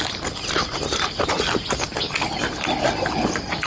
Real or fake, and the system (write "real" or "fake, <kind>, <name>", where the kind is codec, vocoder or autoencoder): real